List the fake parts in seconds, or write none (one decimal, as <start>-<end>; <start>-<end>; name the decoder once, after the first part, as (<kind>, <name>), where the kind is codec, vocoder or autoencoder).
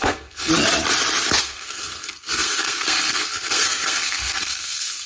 0.0-0.5 (codec, SNAC); 1.4-5.1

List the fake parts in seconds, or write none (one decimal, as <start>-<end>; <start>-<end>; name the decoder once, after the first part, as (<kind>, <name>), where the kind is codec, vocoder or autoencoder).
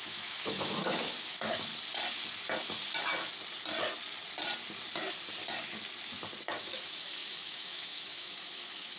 0.0-1.7 (autoencoder, DAC-VAE); 6.6-9.0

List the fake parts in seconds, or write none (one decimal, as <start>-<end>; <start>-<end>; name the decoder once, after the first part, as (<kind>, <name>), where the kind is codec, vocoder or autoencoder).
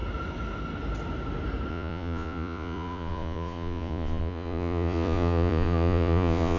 1.7-6.6 (vocoder, Vocos)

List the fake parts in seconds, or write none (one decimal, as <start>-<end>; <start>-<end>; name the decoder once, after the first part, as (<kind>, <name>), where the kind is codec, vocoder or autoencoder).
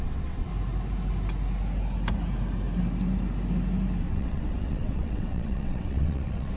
0.0-0.5 (vocoder, WaveNeXt); 4.0-6.6